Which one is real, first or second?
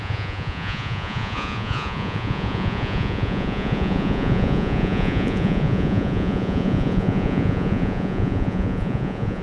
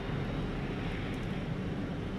second